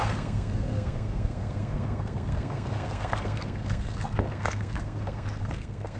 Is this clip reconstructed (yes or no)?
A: yes